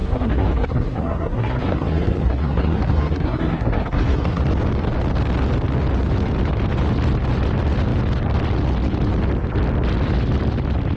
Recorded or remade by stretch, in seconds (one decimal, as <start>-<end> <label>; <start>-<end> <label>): 0.0-4.4 remade; 4.4-11.0 recorded